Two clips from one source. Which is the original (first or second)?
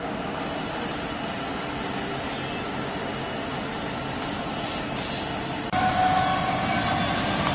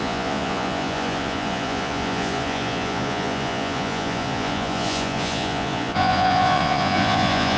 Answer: first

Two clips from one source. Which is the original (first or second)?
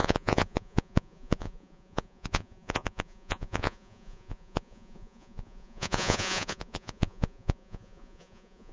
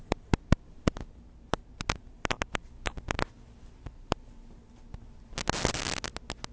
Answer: second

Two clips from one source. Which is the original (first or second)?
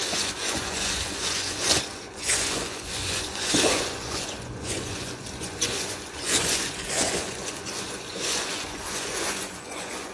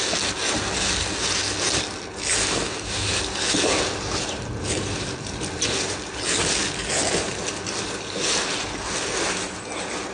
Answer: second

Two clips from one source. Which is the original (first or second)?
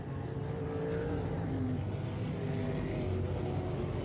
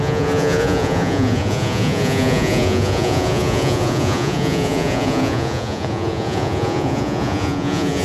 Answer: first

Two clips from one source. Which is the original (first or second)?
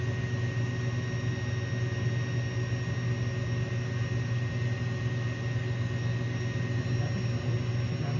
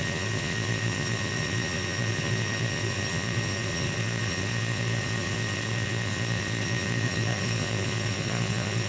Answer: first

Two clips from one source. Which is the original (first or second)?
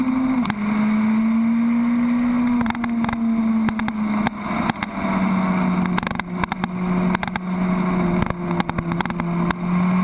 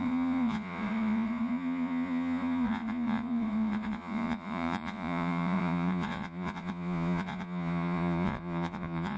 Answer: first